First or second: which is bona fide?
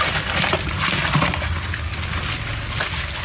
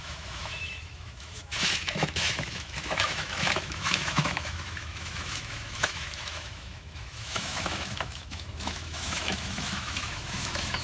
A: first